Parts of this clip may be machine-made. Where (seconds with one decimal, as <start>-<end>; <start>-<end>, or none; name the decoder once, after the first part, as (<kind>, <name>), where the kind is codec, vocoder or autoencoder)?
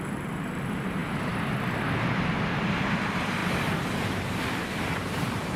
0.0-5.6 (vocoder, BigVGAN v2)